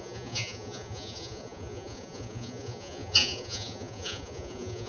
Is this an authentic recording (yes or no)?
no